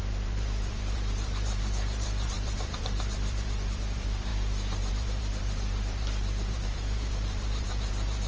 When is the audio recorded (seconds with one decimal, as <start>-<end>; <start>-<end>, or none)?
none